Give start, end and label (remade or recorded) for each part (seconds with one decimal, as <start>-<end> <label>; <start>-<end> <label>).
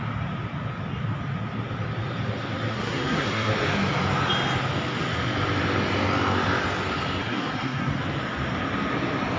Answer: 0.0-2.7 recorded; 2.7-3.5 remade; 3.5-7.2 recorded; 7.2-7.9 remade; 7.9-9.4 recorded